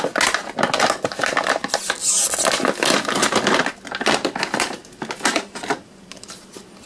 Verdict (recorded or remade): recorded